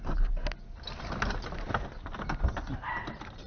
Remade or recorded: recorded